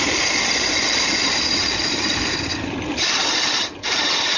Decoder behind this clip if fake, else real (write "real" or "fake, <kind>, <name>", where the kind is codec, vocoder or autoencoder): real